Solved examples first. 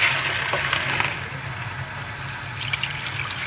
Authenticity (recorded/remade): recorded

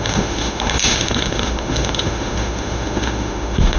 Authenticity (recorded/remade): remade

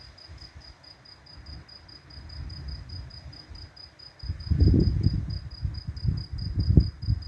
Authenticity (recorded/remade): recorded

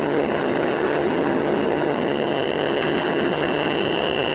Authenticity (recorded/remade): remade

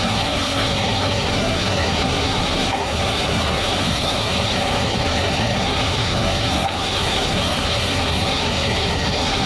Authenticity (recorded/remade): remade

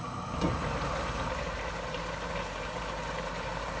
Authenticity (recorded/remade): remade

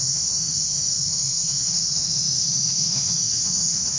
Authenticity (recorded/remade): remade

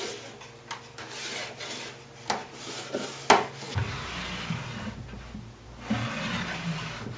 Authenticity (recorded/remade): recorded